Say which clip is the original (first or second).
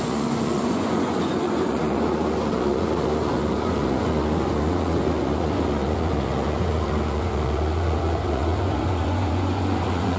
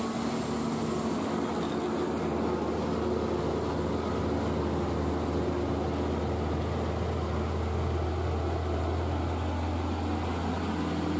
second